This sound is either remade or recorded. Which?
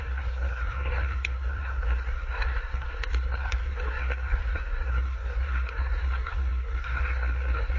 remade